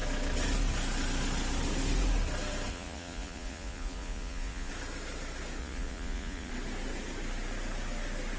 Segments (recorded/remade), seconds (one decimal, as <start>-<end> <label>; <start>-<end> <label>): 0.0-2.7 recorded; 2.7-4.7 remade; 4.7-5.6 recorded; 5.6-6.5 remade; 6.5-8.4 recorded